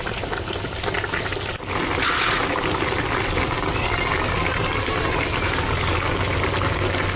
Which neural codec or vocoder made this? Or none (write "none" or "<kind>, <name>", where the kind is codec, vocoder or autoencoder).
none